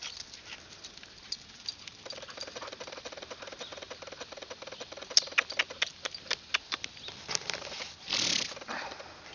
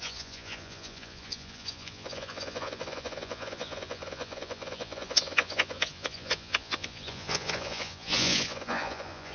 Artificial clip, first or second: second